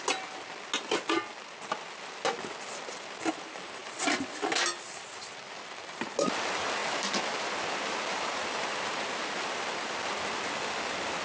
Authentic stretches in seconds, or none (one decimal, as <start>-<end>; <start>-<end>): 0.0-3.8; 6.1-6.8; 7.3-11.2